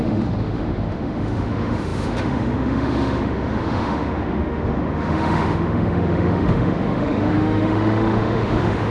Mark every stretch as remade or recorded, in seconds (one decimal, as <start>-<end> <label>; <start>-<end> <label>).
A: 0.0-8.9 remade